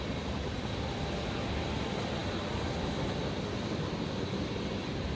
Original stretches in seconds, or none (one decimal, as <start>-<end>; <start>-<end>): 0.0-5.2